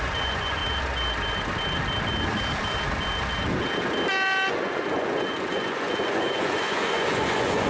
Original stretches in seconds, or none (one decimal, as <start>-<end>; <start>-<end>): 0.6-4.5